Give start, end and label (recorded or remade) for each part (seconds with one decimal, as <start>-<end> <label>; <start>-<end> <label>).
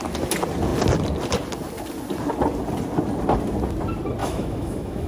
0.0-4.2 recorded; 4.2-5.1 remade